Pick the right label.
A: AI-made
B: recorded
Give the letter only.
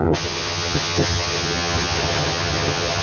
A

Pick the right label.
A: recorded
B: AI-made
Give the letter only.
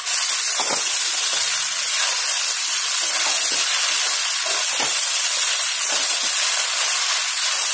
A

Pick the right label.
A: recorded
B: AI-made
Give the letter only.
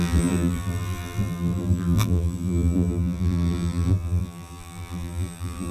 B